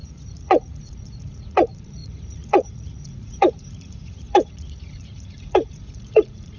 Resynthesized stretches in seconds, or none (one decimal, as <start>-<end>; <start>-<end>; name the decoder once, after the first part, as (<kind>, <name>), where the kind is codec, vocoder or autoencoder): 0.0-6.6 (vocoder, Vocos)